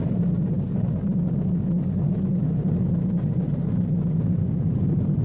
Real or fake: real